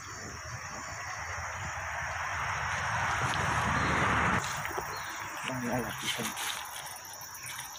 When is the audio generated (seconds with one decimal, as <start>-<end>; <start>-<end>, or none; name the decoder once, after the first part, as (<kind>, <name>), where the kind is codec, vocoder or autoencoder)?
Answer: none